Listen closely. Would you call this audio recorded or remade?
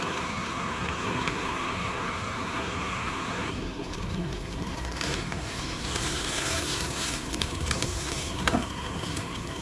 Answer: remade